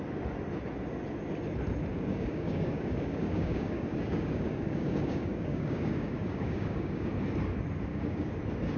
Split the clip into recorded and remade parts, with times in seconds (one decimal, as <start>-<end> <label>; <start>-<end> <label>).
0.0-1.9 recorded; 1.9-7.1 remade; 7.1-7.9 recorded; 7.9-8.4 remade; 8.4-8.8 recorded